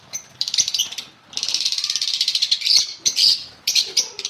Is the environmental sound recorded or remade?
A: remade